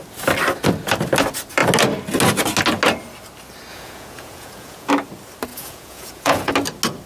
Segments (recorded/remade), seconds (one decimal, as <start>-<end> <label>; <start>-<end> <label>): 0.0-3.7 recorded; 3.7-4.9 remade; 4.9-5.5 recorded; 5.5-6.5 remade; 6.5-7.1 recorded

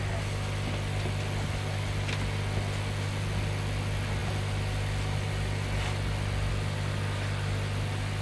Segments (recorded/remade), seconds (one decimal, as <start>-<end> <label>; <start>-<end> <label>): 0.0-8.2 recorded

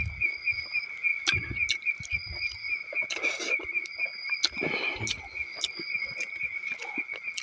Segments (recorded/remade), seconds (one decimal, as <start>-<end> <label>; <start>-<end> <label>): 0.0-7.4 recorded